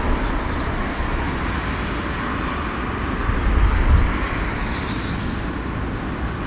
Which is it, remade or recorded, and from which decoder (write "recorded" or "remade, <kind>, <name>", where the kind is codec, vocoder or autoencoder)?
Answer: recorded